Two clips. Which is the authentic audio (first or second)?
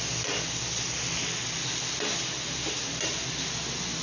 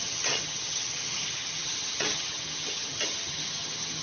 first